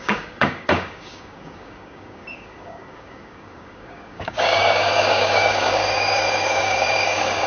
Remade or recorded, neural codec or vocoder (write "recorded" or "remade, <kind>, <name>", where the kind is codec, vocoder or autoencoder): remade, codec, DAC